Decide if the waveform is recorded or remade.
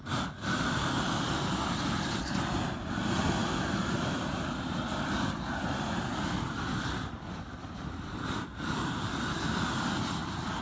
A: remade